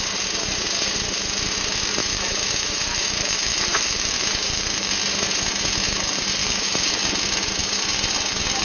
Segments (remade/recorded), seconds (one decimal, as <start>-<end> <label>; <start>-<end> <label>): 0.0-2.0 recorded; 2.0-4.9 remade; 4.9-6.4 recorded; 6.4-6.9 remade; 6.9-8.6 recorded